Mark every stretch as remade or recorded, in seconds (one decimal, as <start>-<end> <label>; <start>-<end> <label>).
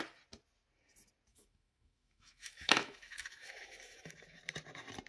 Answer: 0.0-1.3 recorded; 1.3-4.4 remade; 4.4-5.1 recorded